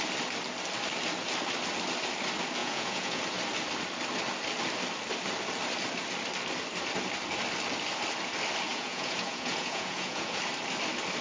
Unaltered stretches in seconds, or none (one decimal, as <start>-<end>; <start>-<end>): 0.0-2.6; 3.2-8.7; 10.4-11.2